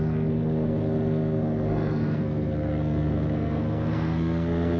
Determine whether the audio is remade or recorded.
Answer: remade